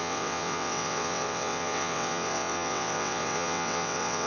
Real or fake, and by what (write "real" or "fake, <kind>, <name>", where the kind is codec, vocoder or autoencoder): fake, vocoder, WaveNeXt